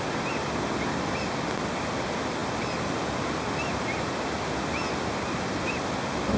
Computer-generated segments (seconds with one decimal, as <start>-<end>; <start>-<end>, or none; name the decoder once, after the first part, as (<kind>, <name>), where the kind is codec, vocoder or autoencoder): none